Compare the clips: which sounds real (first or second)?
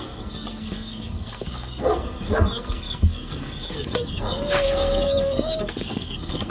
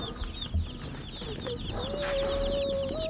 second